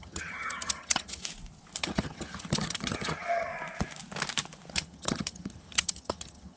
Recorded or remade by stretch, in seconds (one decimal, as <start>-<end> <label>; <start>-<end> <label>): 0.0-1.2 remade; 1.2-1.8 recorded; 1.8-3.5 remade; 3.5-4.7 recorded; 4.7-6.6 remade